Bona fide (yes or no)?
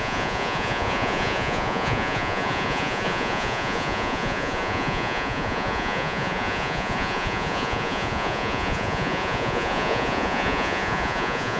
no